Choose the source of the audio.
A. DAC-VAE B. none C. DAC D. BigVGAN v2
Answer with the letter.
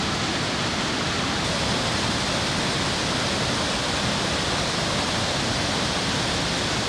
B